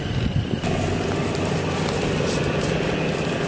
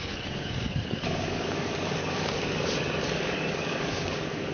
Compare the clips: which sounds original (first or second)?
first